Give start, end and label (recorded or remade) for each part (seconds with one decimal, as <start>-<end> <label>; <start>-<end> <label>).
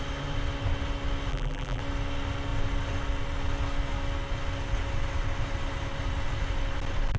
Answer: 0.0-1.3 recorded; 1.3-1.8 remade; 1.8-7.2 recorded